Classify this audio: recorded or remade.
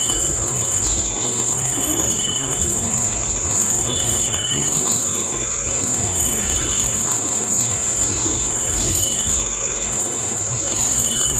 remade